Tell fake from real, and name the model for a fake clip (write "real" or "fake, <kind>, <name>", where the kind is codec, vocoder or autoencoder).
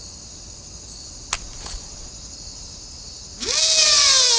real